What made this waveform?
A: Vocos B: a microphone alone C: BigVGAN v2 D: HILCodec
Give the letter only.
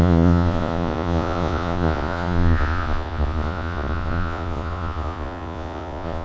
A